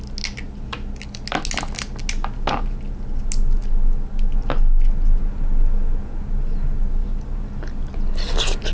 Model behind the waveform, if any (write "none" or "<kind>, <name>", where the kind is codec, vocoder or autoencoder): none